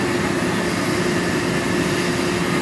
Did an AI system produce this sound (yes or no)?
no